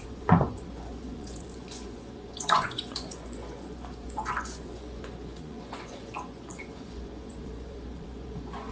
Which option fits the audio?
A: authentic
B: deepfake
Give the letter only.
B